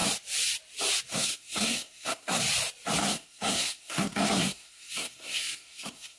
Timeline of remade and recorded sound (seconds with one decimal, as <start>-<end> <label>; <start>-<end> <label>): 0.0-1.1 recorded; 1.1-2.4 remade; 2.4-3.0 recorded; 3.0-6.2 remade